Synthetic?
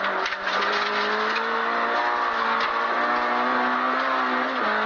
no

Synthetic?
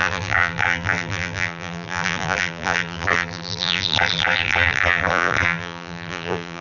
yes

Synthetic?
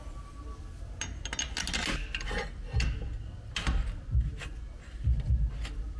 no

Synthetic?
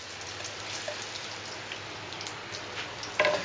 no